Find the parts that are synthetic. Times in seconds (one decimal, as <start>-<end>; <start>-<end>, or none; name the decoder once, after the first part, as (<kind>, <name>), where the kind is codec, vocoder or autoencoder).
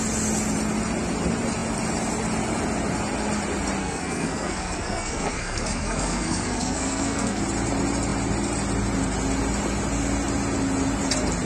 3.8-7.4 (codec, SNAC)